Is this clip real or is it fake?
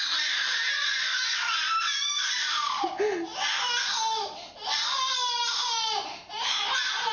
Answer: real